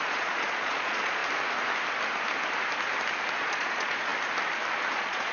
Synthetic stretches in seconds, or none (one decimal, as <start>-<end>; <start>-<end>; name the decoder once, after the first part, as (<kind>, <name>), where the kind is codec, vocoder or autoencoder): 0.0-1.2 (vocoder, Vocos); 3.3-4.1; 4.8-5.3